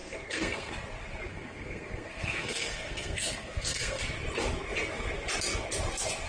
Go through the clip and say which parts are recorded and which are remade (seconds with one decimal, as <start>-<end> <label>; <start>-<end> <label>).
0.0-0.7 remade; 0.7-1.3 recorded; 1.3-4.0 remade; 4.0-6.3 recorded